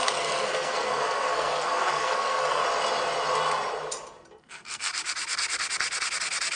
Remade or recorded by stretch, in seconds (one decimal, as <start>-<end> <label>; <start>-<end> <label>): 0.0-2.6 remade; 2.6-4.4 recorded; 4.4-4.9 remade; 4.9-6.6 recorded